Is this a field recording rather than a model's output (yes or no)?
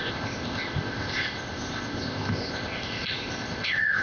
no